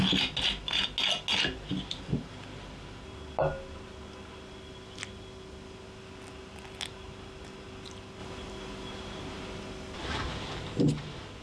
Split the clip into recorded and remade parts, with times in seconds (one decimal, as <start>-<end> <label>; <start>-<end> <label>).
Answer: 0.0-11.4 recorded